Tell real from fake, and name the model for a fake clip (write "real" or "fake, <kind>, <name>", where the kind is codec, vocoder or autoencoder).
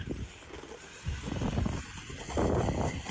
real